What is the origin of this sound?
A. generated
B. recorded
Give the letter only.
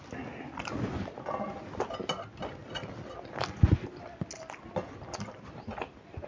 B